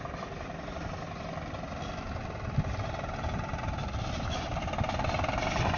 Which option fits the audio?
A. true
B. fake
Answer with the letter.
A